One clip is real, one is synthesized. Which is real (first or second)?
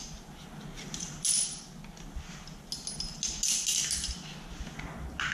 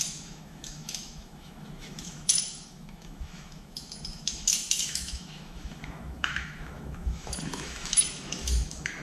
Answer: first